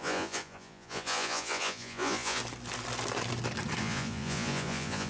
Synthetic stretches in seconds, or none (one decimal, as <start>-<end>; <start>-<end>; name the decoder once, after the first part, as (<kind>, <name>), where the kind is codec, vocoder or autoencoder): 0.0-2.4 (vocoder, Vocos); 3.8-5.1